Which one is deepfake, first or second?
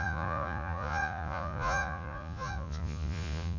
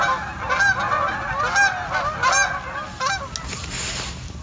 first